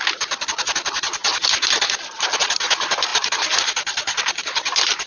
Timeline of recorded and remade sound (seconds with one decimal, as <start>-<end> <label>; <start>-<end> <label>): 0.0-5.1 recorded